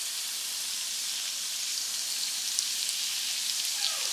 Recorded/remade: recorded